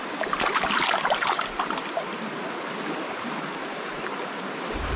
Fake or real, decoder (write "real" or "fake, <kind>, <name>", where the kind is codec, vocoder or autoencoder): real